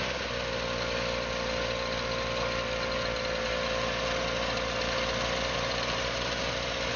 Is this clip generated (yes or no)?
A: no